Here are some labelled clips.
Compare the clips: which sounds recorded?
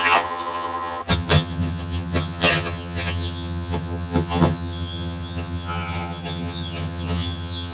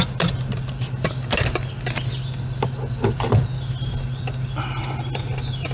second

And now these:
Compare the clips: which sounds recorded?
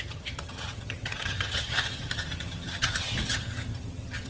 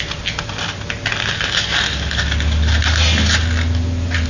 second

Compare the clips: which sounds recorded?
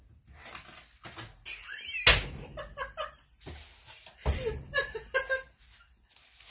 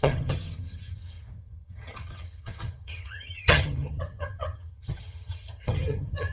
first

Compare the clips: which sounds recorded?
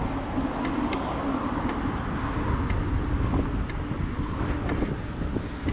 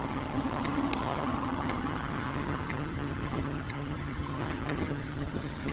first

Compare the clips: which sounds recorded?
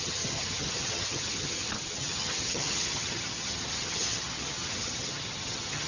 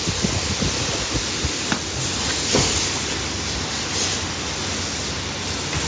second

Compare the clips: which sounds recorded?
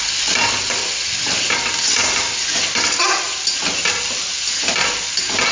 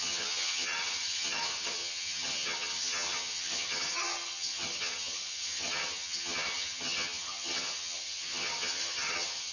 first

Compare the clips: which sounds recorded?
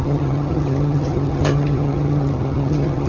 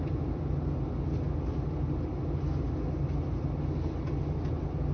second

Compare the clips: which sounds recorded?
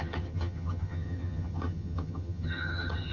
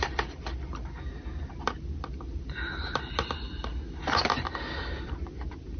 second